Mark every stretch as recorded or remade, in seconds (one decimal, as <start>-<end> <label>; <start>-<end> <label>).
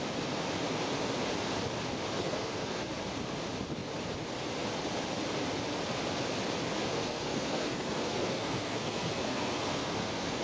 0.0-2.2 recorded; 2.2-2.9 remade; 2.9-6.8 recorded; 6.8-10.4 remade